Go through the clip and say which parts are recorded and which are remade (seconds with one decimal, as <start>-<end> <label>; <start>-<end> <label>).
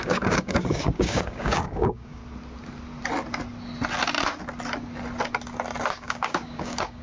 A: 0.0-2.2 remade; 2.2-5.9 recorded; 5.9-7.0 remade